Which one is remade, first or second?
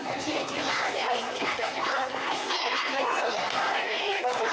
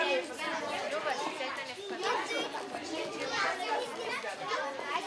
first